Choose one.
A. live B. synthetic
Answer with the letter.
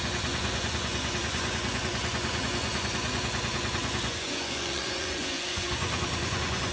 B